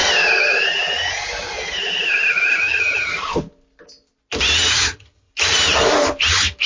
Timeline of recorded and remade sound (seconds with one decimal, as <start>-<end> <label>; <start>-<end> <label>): 0.0-2.6 recorded; 2.6-3.1 remade; 3.1-4.7 recorded; 4.7-5.3 remade; 5.3-6.7 recorded